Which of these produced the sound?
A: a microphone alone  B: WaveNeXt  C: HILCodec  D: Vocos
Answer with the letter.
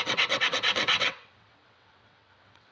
B